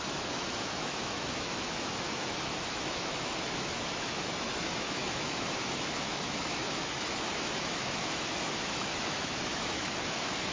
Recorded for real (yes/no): no